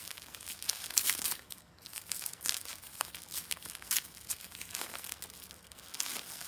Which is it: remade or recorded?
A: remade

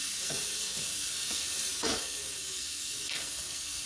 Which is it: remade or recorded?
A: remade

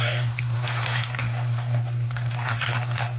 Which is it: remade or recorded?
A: remade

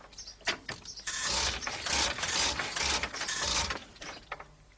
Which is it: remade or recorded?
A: recorded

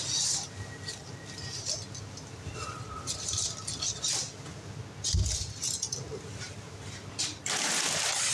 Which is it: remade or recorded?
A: recorded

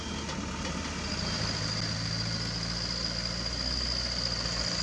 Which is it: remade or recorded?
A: recorded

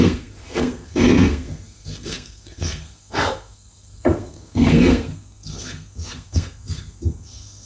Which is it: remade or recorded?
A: remade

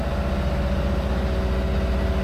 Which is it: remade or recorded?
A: recorded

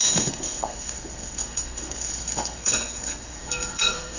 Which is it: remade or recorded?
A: remade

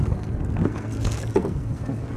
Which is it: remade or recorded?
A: remade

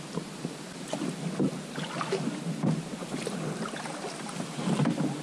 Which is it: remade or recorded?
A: recorded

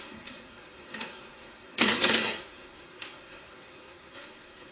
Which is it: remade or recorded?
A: remade